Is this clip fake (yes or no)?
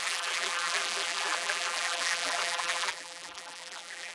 yes